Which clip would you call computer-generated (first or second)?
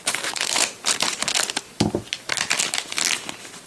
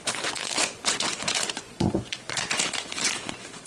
second